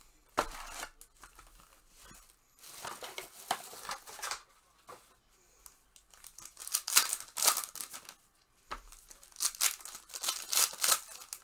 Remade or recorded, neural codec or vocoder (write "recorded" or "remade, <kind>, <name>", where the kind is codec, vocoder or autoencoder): recorded